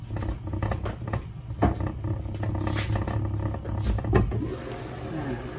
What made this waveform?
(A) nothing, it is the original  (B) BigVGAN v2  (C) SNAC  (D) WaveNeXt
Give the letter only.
A